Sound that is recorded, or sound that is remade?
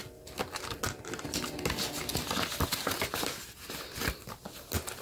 recorded